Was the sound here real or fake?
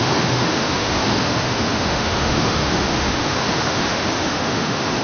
fake